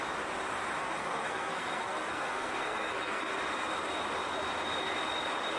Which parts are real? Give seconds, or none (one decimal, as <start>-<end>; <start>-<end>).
0.0-0.8; 3.3-5.6